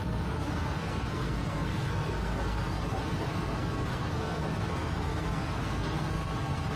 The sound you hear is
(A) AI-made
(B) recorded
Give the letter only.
A